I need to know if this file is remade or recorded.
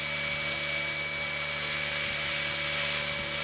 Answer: recorded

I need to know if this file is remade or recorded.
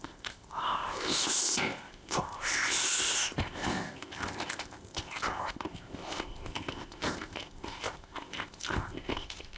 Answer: remade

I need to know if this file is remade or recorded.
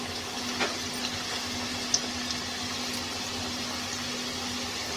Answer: recorded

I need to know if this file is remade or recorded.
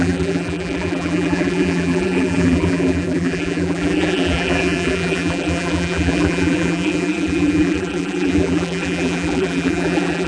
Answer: remade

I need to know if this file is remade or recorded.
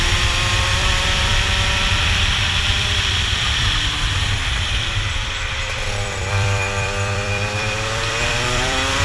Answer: remade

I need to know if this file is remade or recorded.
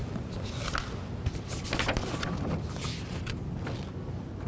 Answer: recorded